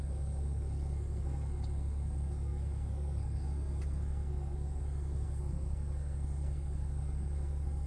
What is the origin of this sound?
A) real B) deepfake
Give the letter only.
B